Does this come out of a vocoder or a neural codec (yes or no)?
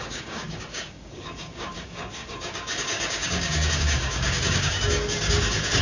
yes